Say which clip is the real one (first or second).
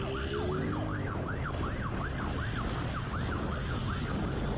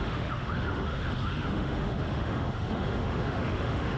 first